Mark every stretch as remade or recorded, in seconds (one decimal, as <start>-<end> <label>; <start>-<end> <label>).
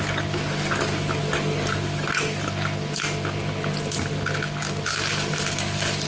0.0-6.1 recorded